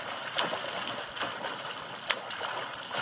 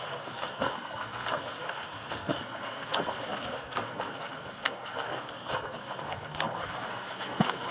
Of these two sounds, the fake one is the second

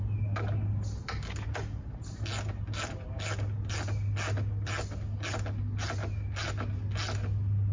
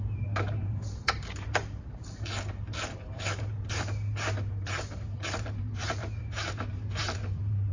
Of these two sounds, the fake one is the second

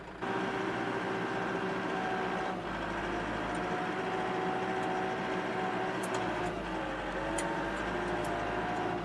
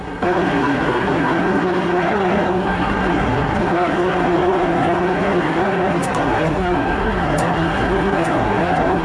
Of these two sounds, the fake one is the second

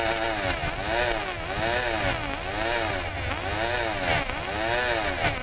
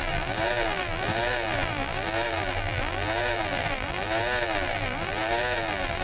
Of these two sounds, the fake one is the second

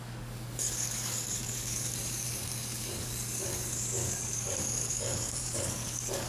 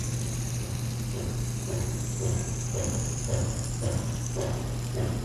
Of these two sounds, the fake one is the first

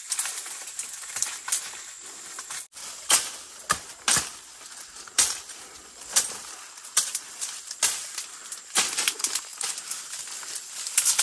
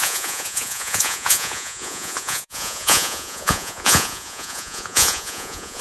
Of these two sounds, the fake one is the second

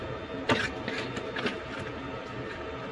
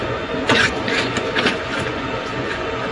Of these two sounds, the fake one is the second